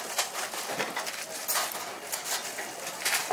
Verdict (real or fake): real